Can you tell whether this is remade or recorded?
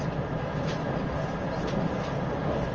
recorded